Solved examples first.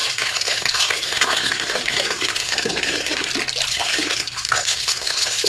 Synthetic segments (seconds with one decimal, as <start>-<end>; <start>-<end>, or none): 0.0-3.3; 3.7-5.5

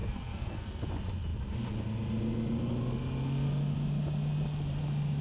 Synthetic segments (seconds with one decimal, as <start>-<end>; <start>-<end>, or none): 0.0-0.8

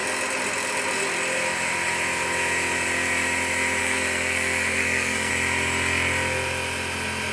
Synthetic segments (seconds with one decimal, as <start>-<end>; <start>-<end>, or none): 3.8-5.3